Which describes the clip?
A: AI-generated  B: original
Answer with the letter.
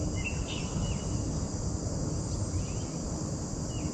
B